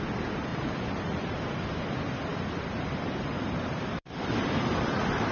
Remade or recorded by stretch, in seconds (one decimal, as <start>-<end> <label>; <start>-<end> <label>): 0.0-0.5 recorded; 0.5-1.3 remade; 1.3-2.3 recorded; 2.3-5.3 remade